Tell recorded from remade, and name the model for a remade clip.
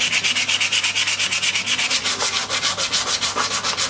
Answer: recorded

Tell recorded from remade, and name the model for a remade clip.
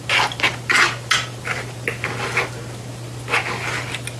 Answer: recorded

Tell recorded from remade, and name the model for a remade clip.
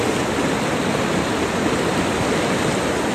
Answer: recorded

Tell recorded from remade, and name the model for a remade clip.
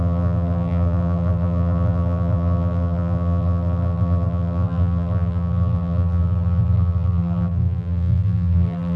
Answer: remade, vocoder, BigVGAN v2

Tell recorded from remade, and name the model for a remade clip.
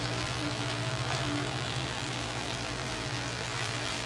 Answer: remade, vocoder, BigVGAN v2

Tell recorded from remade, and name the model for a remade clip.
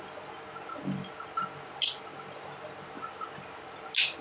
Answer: recorded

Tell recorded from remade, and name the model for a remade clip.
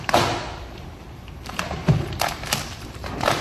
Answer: remade, vocoder, BigVGAN v2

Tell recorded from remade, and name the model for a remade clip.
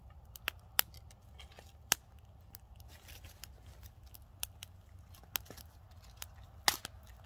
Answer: recorded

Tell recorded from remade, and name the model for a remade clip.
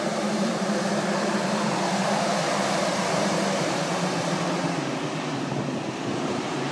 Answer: remade, vocoder, BigVGAN v2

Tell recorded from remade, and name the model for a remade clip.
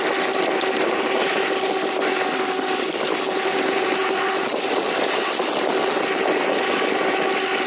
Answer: recorded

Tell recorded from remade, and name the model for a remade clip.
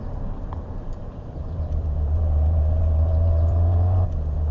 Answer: remade, vocoder, BigVGAN v2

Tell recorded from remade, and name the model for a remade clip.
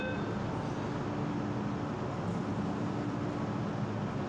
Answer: recorded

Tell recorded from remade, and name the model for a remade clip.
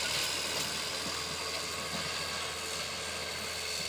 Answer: recorded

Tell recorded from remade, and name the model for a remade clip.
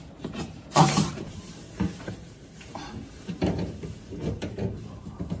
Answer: remade, vocoder, BigVGAN v2